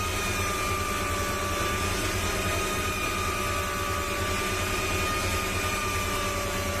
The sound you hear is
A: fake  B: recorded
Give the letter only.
B